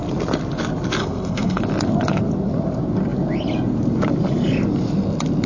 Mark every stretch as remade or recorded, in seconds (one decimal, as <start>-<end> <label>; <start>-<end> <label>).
0.0-1.0 recorded; 1.0-1.6 remade; 1.6-5.5 recorded